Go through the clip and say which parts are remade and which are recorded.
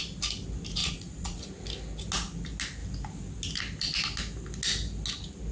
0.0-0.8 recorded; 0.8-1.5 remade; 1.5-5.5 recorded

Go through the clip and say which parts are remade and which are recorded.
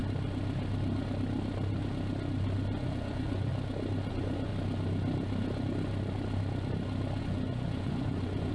0.0-2.8 recorded; 2.8-3.5 remade; 3.5-4.1 recorded; 4.1-4.5 remade; 4.5-7.2 recorded; 7.2-8.5 remade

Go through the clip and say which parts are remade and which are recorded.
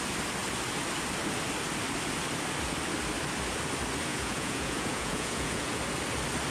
0.0-4.1 recorded; 4.1-5.8 remade; 5.8-6.5 recorded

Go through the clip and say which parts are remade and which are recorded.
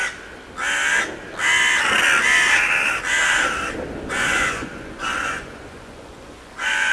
0.0-4.1 recorded; 4.1-6.9 remade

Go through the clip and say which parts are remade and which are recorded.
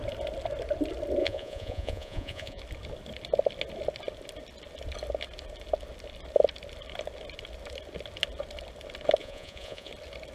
0.0-1.2 recorded; 1.2-2.6 remade; 2.6-9.2 recorded; 9.2-9.9 remade; 9.9-10.3 recorded